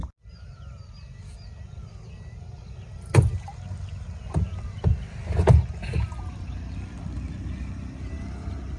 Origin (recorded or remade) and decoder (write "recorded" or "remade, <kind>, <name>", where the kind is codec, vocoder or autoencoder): recorded